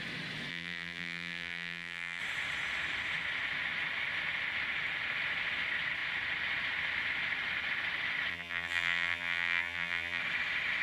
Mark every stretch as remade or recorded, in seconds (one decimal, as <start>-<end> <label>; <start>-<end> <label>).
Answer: 0.0-0.5 recorded; 0.5-2.2 remade; 2.2-8.3 recorded; 8.3-10.2 remade; 10.2-10.8 recorded